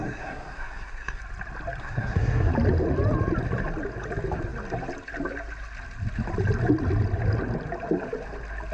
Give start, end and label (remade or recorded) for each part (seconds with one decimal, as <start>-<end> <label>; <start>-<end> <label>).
0.0-1.2 remade; 1.2-1.8 recorded; 1.8-2.5 remade; 2.5-8.7 recorded